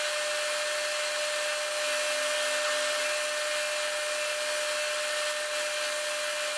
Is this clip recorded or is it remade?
recorded